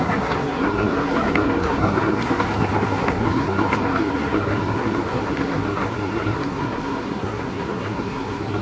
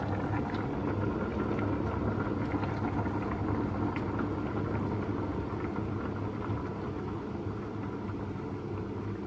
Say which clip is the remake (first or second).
first